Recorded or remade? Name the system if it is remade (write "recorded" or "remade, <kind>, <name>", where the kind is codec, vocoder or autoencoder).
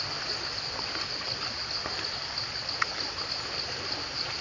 recorded